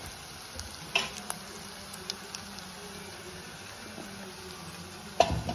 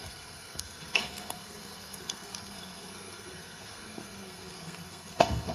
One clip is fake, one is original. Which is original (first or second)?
first